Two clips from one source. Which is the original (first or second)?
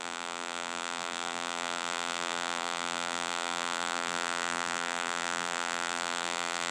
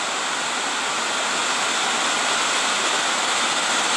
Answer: second